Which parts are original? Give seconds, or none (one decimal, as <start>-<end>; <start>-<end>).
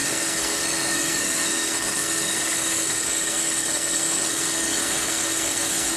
none